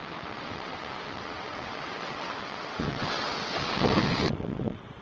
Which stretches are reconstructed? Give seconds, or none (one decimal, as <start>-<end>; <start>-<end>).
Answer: 0.0-5.0

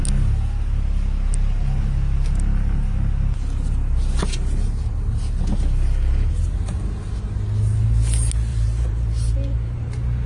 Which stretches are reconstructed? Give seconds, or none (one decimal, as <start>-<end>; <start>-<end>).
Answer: 8.5-9.9

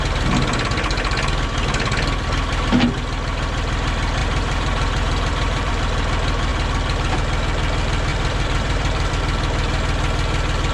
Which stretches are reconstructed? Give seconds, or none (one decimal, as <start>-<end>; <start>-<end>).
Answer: 4.2-5.7; 8.1-9.1